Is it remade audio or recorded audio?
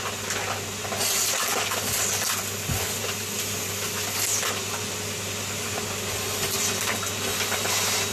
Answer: recorded